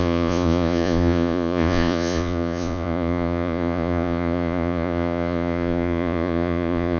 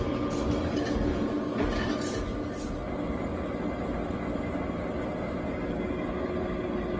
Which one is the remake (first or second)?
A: first